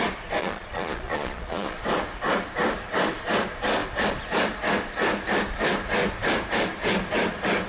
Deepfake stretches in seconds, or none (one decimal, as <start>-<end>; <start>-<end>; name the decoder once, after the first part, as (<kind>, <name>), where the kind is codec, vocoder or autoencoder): 0.4-1.8 (vocoder, Vocos)